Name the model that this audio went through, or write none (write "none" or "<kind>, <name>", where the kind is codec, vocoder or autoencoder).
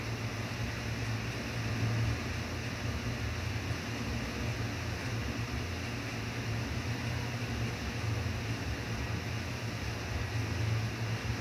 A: none